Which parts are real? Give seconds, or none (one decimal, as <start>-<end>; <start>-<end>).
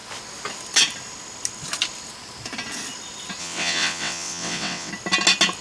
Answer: 0.0-3.4; 4.9-5.6